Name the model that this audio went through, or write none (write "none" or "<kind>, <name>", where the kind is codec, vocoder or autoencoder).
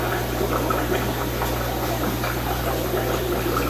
none